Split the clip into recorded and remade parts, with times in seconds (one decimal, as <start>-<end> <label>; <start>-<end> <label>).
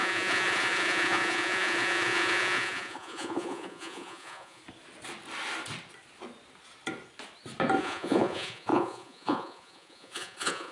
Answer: 0.0-4.6 remade; 4.6-7.8 recorded; 7.8-10.7 remade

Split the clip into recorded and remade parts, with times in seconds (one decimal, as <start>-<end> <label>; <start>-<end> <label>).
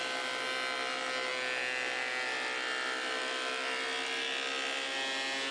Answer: 0.0-5.5 recorded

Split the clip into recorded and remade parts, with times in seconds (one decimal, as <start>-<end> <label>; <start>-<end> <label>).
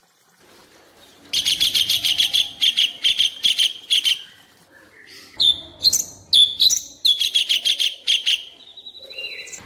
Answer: 0.0-5.7 remade; 5.7-6.7 recorded; 6.7-9.7 remade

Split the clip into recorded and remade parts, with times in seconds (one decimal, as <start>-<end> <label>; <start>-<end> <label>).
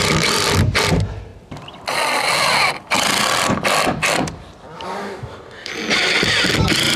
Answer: 0.0-5.0 recorded; 5.0-5.7 remade; 5.7-7.0 recorded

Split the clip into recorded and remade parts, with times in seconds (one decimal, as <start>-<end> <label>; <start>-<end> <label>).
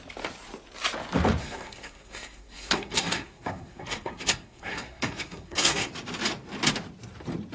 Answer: 0.0-1.4 recorded; 1.4-5.9 remade; 5.9-7.5 recorded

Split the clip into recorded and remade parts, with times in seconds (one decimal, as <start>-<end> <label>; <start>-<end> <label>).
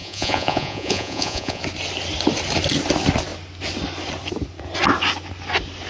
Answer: 0.0-1.6 remade; 1.6-5.9 recorded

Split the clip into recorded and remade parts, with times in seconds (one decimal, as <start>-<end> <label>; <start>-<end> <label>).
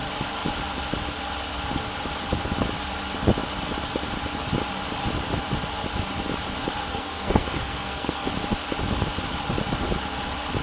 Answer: 0.0-6.8 recorded; 6.8-8.3 remade; 8.3-10.6 recorded